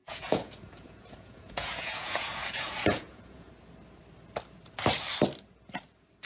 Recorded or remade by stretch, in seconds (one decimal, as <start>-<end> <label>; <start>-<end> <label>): 0.0-3.5 remade; 3.5-6.3 recorded